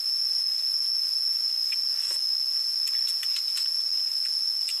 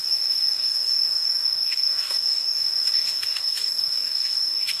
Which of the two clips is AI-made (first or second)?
second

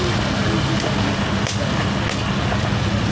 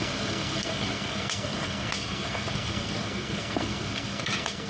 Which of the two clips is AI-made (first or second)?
second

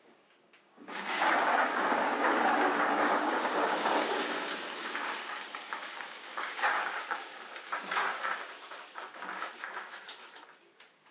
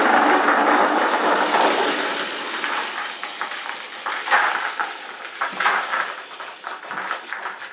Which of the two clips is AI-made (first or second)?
first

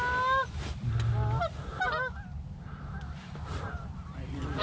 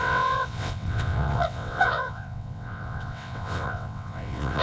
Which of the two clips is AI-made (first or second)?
second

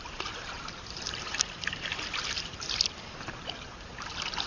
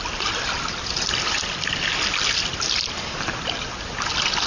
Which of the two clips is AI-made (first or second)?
first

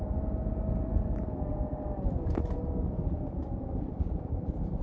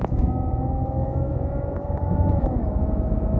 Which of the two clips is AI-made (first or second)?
second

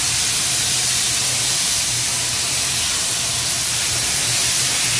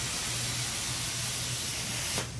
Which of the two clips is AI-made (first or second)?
first